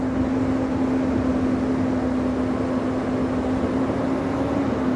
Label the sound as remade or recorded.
recorded